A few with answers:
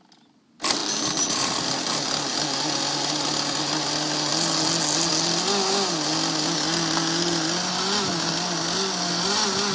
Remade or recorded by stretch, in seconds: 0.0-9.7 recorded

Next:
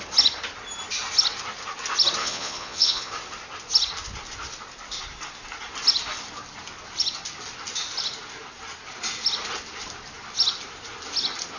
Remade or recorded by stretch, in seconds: 0.0-2.2 recorded; 2.2-3.1 remade; 3.1-11.6 recorded

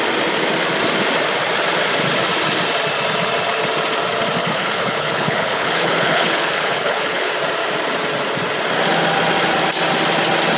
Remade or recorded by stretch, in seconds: 0.0-4.4 recorded; 4.4-7.3 remade; 7.3-10.6 recorded

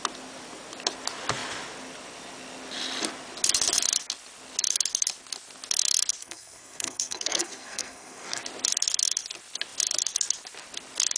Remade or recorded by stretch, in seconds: 0.0-6.2 recorded; 6.2-8.4 remade; 8.4-11.2 recorded